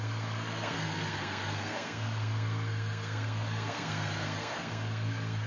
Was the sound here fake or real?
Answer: fake